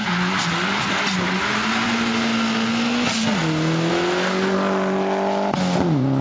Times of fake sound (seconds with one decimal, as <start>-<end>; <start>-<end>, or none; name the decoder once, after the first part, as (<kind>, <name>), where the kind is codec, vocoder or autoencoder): none